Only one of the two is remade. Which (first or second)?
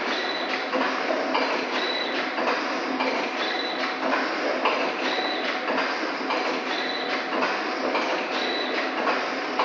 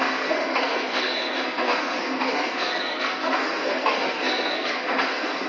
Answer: second